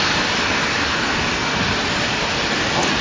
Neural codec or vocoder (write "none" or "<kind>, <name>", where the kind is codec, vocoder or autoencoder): none